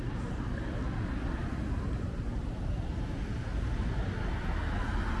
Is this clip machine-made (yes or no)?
no